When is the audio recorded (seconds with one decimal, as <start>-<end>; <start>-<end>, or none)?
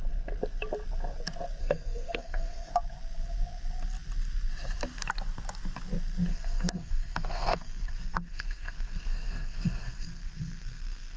0.0-1.6; 2.7-6.3